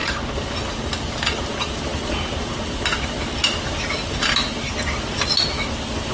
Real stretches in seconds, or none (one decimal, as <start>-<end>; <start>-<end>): 0.0-6.1